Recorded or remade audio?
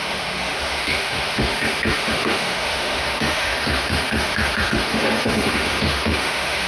remade